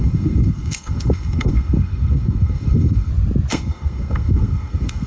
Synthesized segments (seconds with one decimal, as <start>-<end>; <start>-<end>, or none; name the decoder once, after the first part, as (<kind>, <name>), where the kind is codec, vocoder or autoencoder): 0.0-3.1 (codec, SNAC); 3.5-5.1